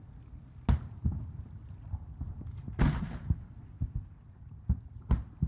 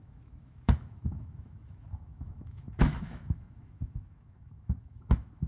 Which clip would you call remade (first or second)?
second